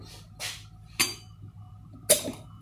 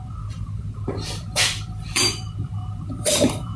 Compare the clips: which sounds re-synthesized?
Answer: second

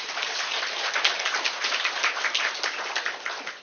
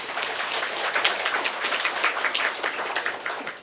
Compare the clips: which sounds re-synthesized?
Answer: first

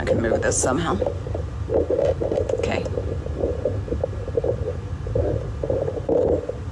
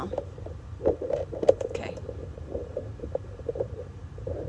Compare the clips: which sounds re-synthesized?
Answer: second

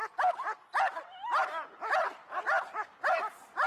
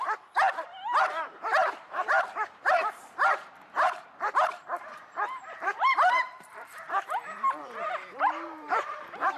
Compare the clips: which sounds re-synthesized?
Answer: second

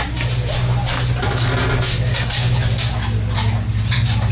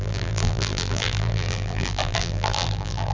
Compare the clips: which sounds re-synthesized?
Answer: second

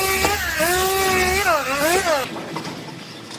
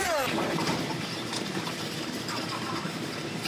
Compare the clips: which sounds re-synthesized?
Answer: second